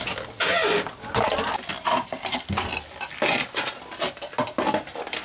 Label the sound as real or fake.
real